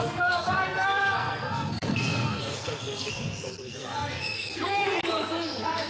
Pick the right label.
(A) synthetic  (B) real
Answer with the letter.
A